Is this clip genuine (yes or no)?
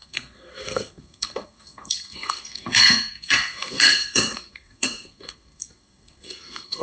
no